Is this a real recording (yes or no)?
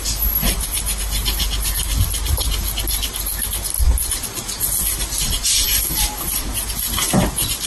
yes